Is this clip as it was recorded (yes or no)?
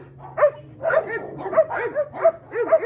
yes